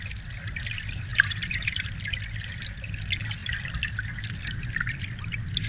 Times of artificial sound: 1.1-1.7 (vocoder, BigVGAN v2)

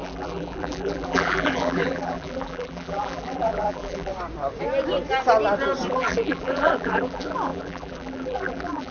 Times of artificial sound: 0.0-4.1 (vocoder, BigVGAN v2); 5.9-8.9

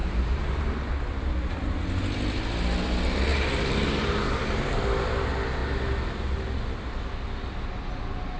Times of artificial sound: 0.0-0.9 (vocoder, BigVGAN v2); 3.3-4.3

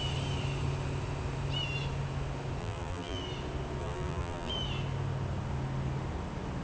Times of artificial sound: 2.6-3.2 (vocoder, BigVGAN v2); 3.8-4.5

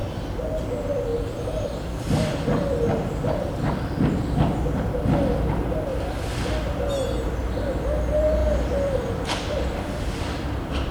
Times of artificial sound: 0.0-0.7 (vocoder, BigVGAN v2); 1.1-4.8; 5.9-6.8; 8.4-10.9